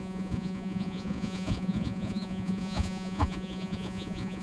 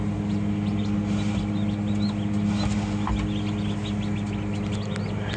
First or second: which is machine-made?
first